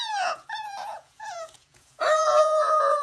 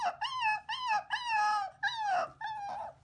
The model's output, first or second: first